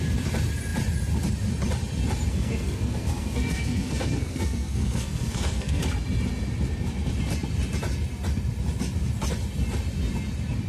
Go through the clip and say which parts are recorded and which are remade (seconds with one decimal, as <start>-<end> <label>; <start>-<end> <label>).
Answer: 0.0-2.3 recorded; 2.3-5.8 remade; 5.8-10.7 recorded